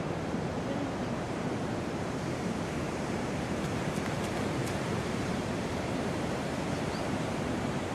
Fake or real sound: fake